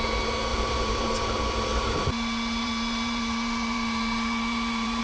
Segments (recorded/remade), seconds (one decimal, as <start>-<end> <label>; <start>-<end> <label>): 0.0-0.5 recorded; 0.5-1.0 remade; 1.0-1.7 recorded; 1.7-5.0 remade